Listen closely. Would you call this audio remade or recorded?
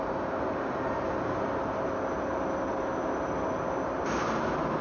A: recorded